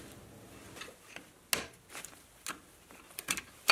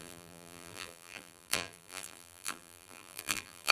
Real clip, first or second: first